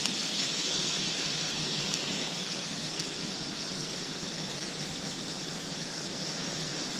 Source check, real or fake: fake